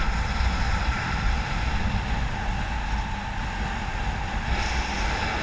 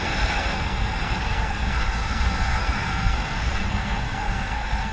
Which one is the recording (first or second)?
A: first